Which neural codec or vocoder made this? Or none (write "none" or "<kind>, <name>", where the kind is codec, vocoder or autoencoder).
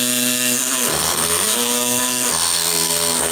codec, SNAC